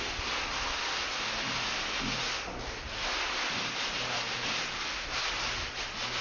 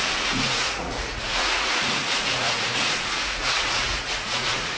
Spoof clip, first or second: second